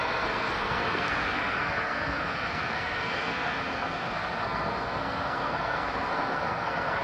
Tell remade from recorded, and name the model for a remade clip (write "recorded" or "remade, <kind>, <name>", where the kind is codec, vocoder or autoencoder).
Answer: remade, codec, SNAC